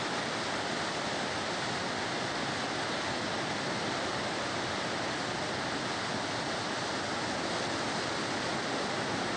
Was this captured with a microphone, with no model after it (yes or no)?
yes